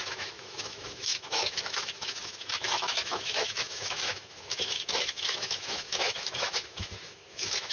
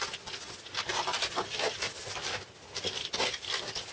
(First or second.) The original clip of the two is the second